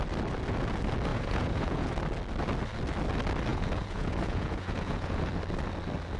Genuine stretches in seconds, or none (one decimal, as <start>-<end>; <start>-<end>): 0.0-1.1; 1.9-3.5; 5.3-6.2